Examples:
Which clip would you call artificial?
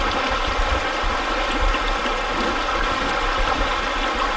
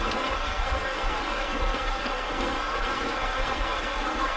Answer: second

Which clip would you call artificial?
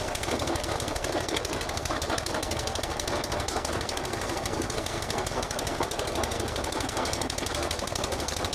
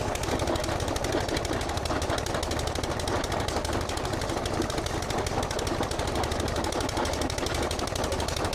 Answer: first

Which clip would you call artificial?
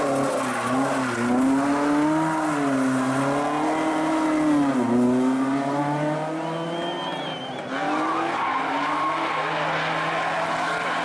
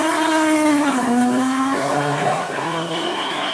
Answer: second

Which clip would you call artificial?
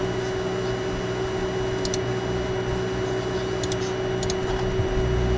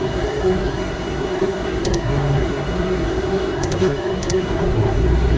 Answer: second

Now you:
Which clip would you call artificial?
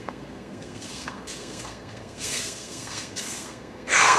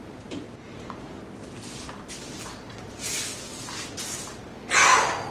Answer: first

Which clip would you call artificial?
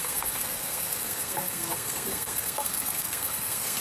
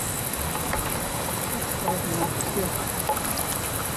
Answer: first